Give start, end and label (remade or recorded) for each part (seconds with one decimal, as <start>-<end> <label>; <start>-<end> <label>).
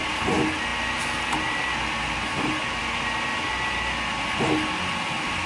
0.0-5.5 recorded